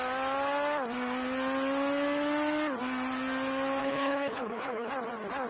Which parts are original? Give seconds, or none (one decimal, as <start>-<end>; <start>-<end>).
0.0-3.8; 4.9-5.5